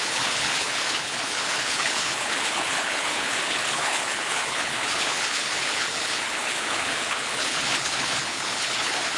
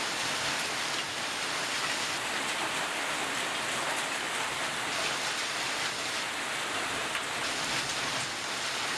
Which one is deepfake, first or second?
first